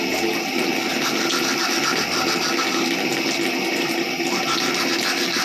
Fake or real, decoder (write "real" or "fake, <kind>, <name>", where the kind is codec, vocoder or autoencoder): real